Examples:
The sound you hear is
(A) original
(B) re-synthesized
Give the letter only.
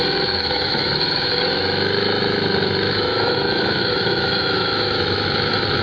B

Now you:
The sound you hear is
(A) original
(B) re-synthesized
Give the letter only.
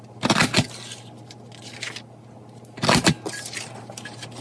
A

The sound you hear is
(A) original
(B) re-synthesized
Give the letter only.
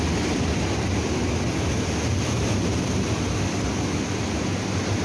A